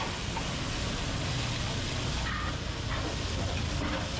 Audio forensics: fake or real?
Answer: real